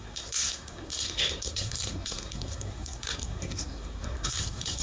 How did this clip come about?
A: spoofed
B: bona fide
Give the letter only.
A